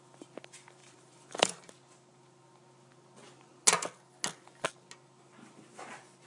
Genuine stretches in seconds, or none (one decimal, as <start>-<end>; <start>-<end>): 0.0-0.8; 1.7-6.3